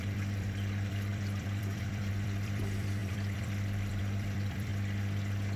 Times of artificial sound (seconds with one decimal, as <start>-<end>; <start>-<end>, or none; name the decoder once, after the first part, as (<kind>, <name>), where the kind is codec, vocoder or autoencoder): 0.0-4.7 (vocoder, BigVGAN v2)